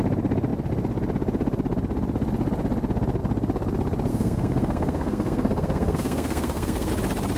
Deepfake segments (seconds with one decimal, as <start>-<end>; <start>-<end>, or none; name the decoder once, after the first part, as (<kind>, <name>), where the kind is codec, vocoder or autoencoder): 4.1-6.9 (codec, SNAC)